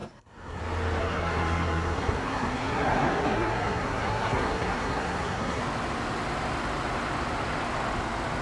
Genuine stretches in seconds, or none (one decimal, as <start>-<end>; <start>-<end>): 0.6-1.0; 5.6-8.4